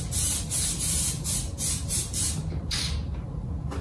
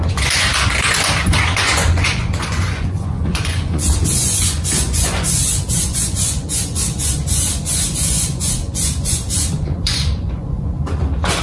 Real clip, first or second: first